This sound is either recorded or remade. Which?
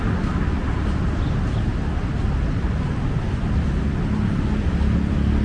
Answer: recorded